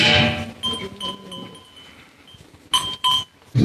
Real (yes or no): yes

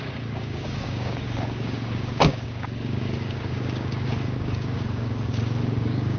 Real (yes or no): no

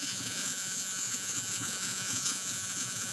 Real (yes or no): no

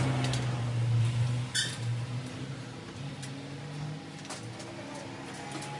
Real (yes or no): yes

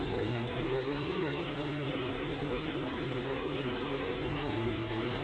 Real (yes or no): no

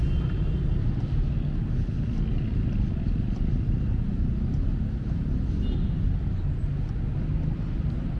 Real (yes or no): yes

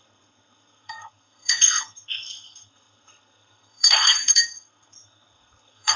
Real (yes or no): no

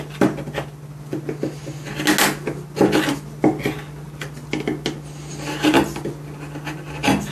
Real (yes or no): yes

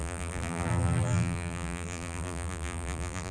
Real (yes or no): no